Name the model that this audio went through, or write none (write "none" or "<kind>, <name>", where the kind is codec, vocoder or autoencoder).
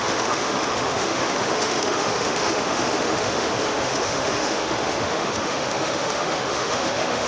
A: autoencoder, DAC-VAE